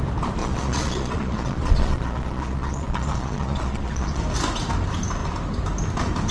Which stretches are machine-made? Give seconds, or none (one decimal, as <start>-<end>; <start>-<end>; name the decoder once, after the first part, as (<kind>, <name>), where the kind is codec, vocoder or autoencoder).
0.4-4.2 (vocoder, Vocos)